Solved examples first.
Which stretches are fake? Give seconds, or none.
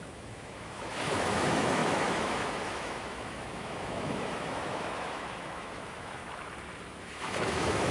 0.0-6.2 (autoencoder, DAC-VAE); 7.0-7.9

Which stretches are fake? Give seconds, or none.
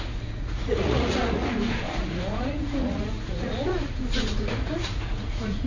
0.0-5.7 (vocoder, Vocos)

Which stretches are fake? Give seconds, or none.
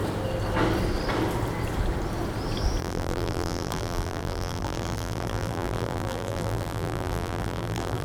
2.8-8.0 (vocoder, BigVGAN v2)